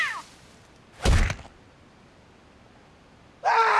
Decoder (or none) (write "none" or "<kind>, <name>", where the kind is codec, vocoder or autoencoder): none